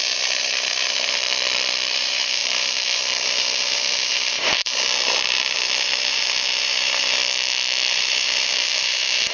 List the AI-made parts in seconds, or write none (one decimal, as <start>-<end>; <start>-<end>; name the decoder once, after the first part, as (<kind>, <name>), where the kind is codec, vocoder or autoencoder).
0.0-1.2 (vocoder, BigVGAN v2); 1.9-7.2; 7.9-9.3